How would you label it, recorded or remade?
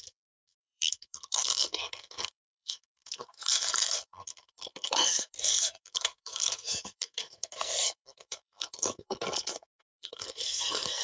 remade